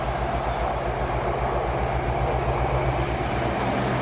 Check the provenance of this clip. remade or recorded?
recorded